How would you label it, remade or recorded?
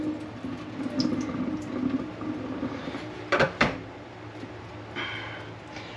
recorded